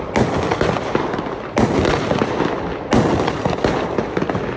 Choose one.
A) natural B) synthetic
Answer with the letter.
A